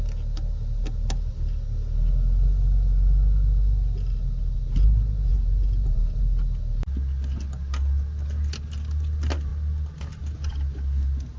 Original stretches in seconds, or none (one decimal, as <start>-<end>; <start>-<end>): 0.0-5.3; 6.2-11.4